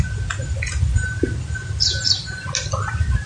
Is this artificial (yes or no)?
no